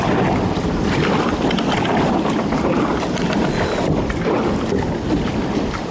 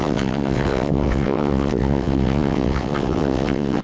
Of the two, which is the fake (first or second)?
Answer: second